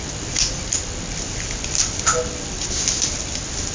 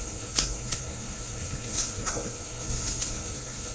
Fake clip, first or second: second